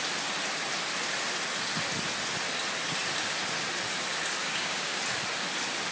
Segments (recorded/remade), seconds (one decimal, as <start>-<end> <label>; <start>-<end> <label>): 0.0-4.4 recorded; 4.4-5.0 remade; 5.0-5.9 recorded